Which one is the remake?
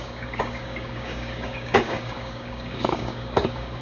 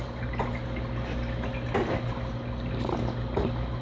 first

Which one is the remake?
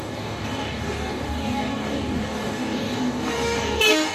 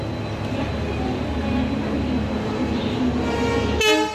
first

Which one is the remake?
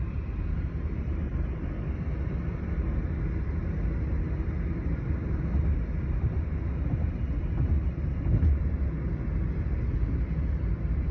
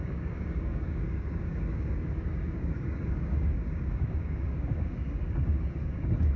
second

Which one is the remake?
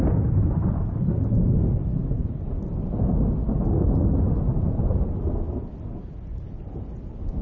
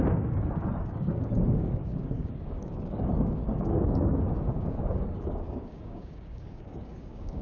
second